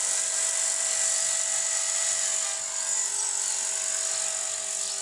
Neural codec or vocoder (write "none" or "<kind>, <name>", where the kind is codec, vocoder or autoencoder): none